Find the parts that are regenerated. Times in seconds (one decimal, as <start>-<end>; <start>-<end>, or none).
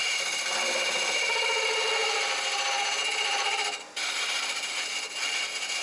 none